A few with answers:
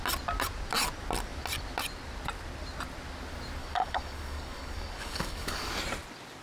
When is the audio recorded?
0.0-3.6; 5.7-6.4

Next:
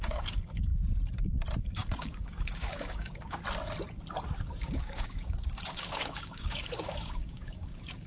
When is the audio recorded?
0.7-1.6; 3.4-4.4

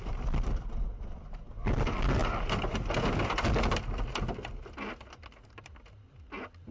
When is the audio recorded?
0.0-6.7

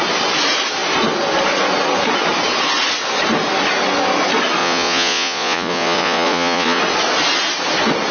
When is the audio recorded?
0.0-4.6; 6.8-8.1